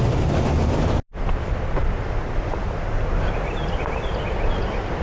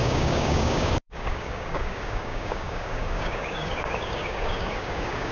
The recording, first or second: first